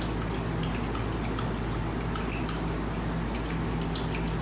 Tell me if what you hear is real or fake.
real